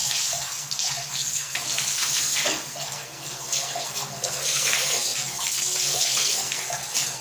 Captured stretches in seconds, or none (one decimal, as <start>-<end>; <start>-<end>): none